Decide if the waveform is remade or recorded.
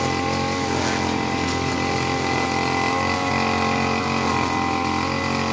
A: recorded